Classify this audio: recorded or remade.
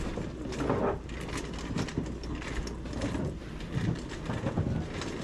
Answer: recorded